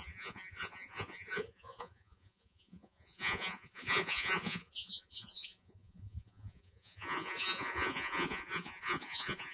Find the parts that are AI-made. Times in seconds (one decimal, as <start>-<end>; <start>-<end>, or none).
0.0-9.5